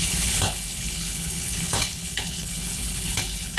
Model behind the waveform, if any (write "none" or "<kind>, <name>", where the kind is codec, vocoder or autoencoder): codec, HILCodec